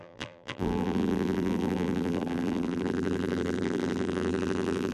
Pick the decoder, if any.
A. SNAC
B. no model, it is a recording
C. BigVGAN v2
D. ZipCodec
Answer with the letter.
C